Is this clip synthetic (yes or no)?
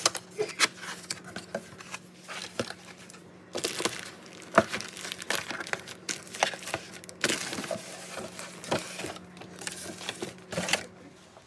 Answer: no